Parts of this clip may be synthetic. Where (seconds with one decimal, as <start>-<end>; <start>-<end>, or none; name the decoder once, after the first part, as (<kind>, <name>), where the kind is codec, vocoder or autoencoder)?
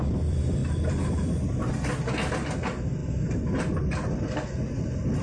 0.0-0.6 (vocoder, BigVGAN v2); 2.3-3.0; 4.8-5.2